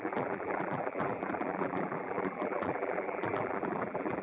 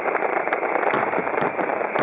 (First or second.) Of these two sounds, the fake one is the first